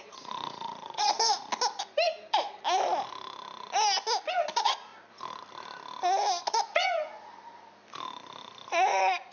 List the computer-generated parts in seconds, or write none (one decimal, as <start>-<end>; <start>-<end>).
0.0-1.5; 4.3-4.9; 6.5-7.1; 8.7-9.3